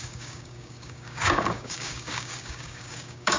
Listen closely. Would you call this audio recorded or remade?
remade